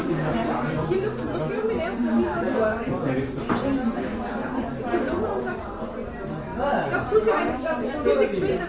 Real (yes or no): yes